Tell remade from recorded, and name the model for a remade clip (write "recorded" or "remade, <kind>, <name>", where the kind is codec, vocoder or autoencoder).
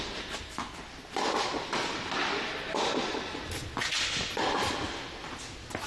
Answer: recorded